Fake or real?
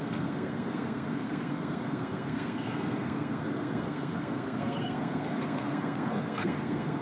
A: fake